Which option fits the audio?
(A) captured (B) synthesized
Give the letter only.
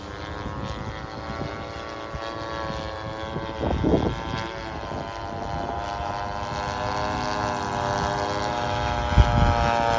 A